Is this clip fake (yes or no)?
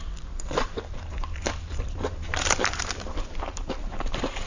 yes